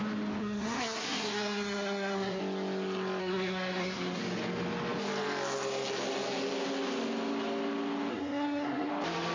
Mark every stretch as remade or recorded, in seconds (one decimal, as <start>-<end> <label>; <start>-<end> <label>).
0.0-0.4 recorded; 0.4-2.4 remade; 2.4-3.2 recorded; 3.2-4.2 remade; 4.2-8.1 recorded; 8.1-8.9 remade; 8.9-9.3 recorded